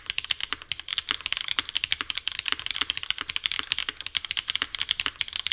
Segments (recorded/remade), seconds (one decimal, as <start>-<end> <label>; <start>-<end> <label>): 0.0-5.5 recorded